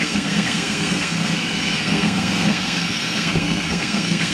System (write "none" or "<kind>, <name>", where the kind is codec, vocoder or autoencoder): codec, SNAC